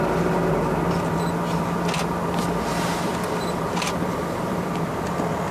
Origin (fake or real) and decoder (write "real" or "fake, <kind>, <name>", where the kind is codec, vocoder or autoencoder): real